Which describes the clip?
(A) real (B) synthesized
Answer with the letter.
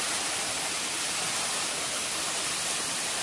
A